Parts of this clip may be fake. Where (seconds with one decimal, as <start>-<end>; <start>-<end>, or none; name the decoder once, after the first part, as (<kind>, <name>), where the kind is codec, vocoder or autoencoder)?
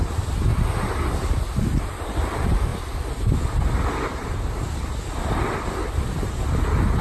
none